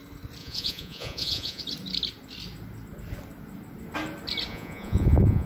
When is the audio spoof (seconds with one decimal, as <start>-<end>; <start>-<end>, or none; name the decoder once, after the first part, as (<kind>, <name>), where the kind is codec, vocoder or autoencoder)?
0.4-1.6 (vocoder, Vocos); 4.5-5.5